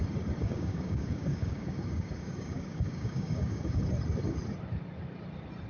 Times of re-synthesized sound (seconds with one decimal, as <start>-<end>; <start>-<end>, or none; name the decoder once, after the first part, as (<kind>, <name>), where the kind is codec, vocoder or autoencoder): 0.4-3.8 (codec, DAC)